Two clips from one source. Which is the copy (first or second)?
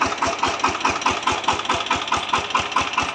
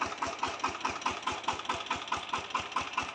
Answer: second